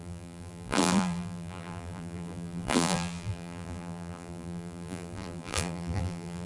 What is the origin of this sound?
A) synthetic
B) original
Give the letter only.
A